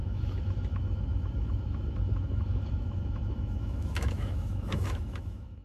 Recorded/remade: remade